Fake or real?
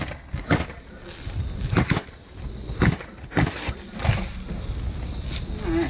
real